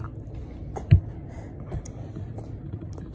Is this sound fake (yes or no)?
no